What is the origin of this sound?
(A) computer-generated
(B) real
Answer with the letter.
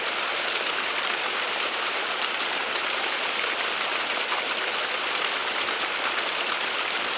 B